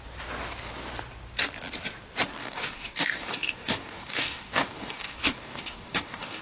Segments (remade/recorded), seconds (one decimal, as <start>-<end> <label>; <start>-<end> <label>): 0.0-2.4 recorded; 2.4-6.4 remade